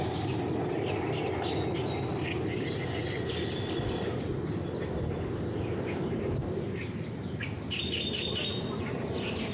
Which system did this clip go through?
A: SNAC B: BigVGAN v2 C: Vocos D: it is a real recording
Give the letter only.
D